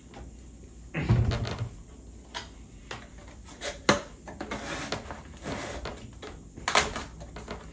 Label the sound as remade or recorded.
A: recorded